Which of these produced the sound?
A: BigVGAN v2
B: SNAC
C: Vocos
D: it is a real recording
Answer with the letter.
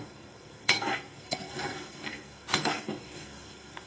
B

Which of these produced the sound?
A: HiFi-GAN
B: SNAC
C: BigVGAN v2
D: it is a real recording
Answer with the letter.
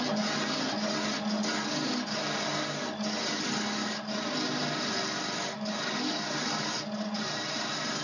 D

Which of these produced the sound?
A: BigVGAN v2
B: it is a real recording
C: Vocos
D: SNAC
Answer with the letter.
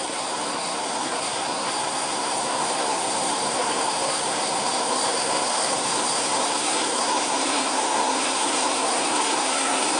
D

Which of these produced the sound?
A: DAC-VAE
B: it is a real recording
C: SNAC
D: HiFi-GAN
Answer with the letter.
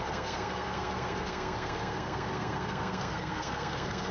C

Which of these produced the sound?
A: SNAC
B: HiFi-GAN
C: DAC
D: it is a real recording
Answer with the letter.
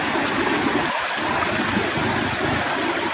D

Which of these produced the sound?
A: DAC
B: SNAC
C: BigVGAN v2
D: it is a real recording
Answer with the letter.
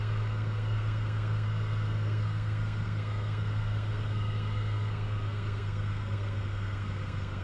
B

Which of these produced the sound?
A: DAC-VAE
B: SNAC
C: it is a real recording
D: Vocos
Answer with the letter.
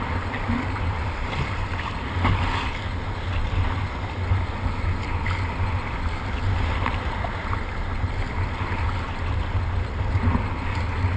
C